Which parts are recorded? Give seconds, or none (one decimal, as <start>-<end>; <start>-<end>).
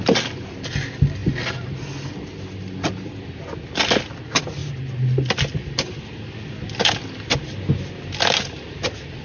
0.0-9.2